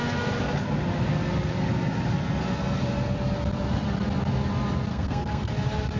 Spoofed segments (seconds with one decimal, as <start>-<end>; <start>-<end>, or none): 4.9-5.5